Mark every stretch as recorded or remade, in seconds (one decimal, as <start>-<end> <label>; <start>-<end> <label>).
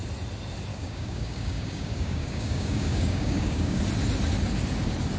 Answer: 0.0-0.7 recorded; 0.7-3.8 remade; 3.8-5.2 recorded